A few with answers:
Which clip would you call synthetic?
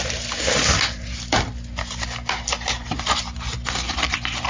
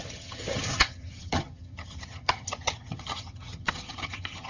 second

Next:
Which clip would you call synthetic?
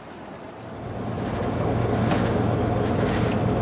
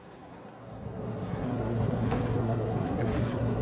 second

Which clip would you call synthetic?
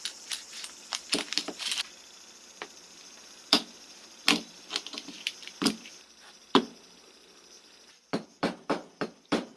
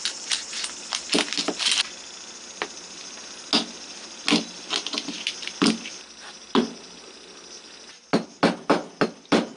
first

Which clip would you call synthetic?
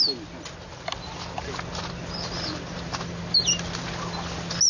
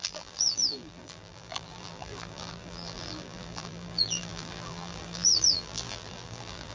second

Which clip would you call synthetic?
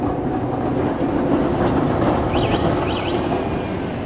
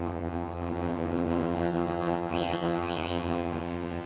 second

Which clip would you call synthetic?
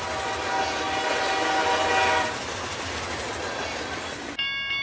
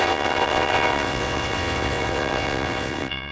second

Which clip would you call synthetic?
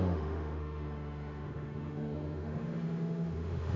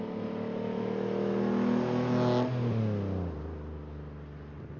first